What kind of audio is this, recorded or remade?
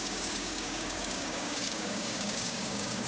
remade